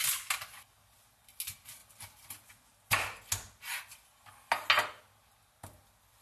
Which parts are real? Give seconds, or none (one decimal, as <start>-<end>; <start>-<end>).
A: 0.0-6.2